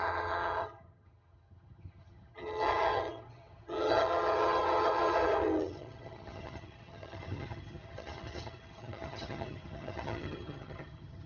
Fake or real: fake